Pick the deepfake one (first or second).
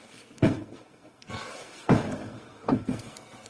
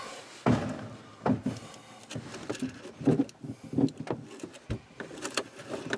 first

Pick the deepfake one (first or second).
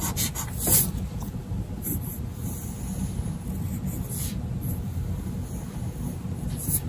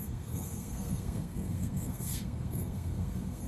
second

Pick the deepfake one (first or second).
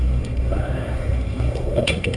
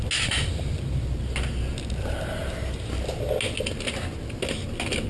first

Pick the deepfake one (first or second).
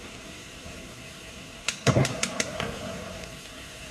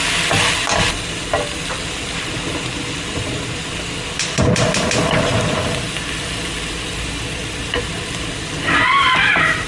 first